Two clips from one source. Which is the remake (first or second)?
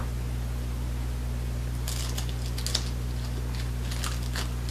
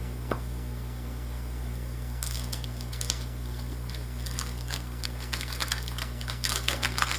second